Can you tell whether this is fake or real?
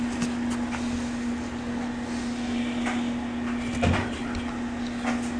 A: real